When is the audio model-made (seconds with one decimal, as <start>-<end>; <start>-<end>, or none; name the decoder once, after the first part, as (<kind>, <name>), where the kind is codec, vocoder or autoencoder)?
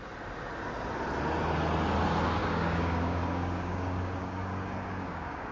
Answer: 2.4-5.5 (codec, DAC)